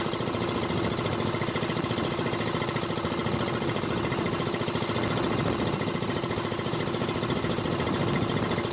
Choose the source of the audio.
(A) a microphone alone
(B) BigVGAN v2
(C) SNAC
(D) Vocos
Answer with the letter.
A